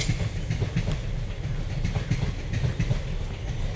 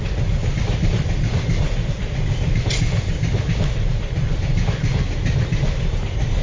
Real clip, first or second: first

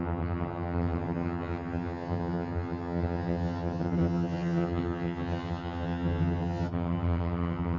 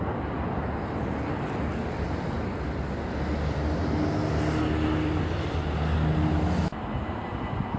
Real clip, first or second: second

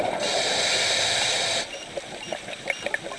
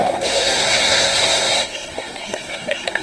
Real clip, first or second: first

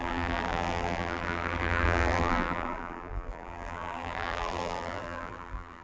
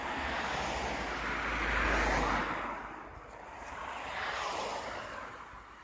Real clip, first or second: second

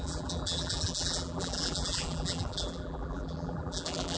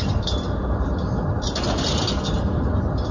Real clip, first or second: second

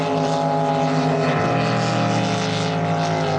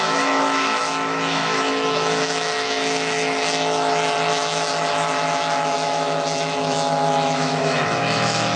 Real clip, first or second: first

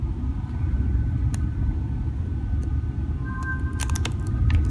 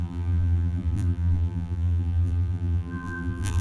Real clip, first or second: first